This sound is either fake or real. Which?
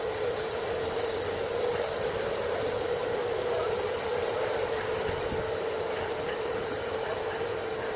real